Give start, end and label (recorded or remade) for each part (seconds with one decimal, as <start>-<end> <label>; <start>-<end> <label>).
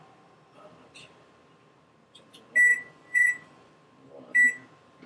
0.0-2.7 recorded; 2.7-3.7 remade; 3.7-5.1 recorded